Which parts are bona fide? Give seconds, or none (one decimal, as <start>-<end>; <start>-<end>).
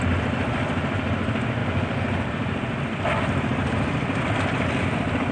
0.0-5.3